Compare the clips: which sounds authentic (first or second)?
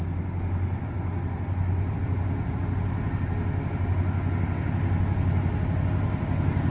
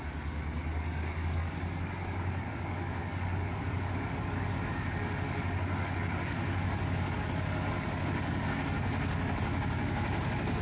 first